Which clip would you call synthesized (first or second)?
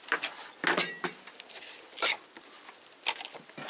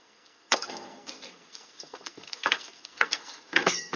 second